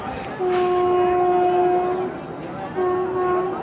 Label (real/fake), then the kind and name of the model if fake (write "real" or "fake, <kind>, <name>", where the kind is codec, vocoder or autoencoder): real